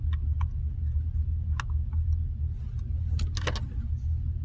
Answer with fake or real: real